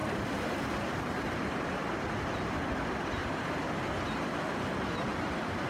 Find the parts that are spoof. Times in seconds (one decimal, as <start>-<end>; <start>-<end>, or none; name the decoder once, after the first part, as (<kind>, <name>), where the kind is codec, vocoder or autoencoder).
0.0-2.6 (vocoder, BigVGAN v2); 3.2-3.7